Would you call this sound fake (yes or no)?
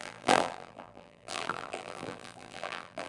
yes